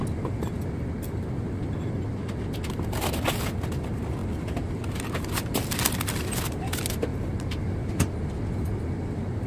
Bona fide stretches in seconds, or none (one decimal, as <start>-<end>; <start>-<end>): 0.0-9.5